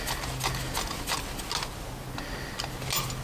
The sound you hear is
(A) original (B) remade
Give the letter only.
A